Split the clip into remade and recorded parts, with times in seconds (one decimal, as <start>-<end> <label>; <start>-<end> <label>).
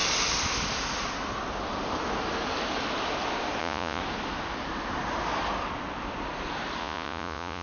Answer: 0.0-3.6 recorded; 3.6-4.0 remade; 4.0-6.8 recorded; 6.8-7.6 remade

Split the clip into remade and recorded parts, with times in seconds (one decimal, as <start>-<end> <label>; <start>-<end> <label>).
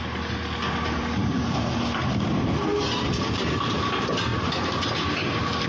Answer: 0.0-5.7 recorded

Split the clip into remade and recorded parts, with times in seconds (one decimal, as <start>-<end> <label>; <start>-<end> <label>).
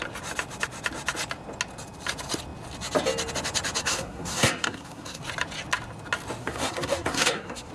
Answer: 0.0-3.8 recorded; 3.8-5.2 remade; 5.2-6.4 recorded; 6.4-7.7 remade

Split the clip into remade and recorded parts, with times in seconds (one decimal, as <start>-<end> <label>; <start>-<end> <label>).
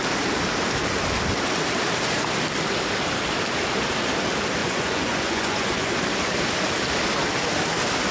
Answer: 0.0-4.6 recorded; 4.6-5.9 remade; 5.9-8.1 recorded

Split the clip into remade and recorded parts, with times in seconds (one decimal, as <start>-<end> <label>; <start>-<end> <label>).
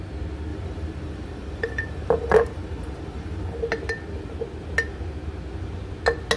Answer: 0.0-0.5 recorded; 0.5-3.4 remade; 3.4-6.4 recorded